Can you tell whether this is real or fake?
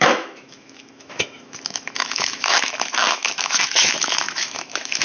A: fake